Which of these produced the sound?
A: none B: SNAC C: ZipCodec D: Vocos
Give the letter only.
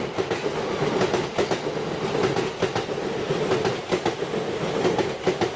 A